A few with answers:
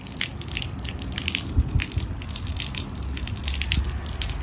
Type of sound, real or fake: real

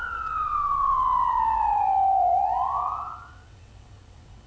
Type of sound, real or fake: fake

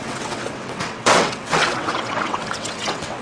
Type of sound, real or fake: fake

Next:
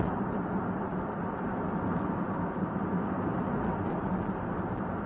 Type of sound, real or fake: real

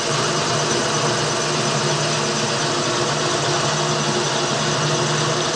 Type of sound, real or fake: real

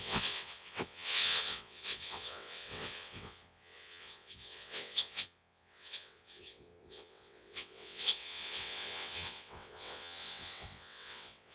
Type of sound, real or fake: fake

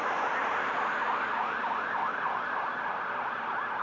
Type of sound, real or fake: real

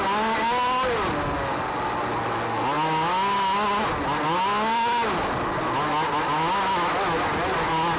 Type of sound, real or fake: real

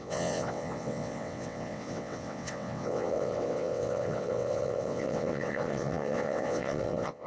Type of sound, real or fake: fake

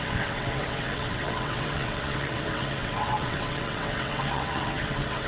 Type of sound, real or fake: fake